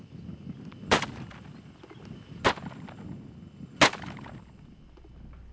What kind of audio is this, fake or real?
real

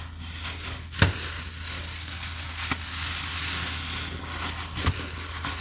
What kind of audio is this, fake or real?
real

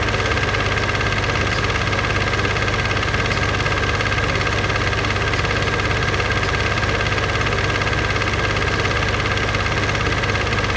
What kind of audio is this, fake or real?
real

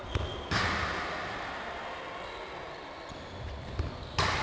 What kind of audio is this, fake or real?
real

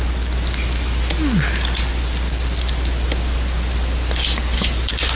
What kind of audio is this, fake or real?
real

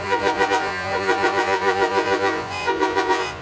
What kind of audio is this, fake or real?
fake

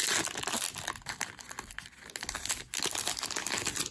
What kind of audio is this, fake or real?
real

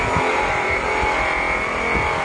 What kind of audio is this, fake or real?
real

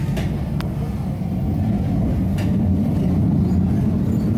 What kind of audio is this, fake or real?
real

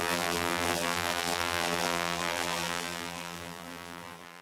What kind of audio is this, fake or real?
fake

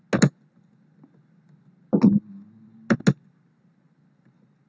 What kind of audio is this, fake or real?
real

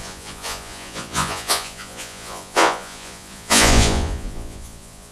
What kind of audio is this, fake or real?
fake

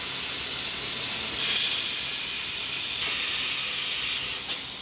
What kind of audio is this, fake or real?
real